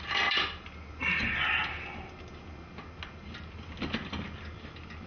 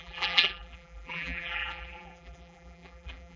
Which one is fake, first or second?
second